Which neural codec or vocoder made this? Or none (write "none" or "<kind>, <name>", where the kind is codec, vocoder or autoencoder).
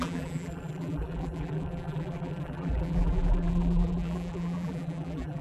vocoder, BigVGAN v2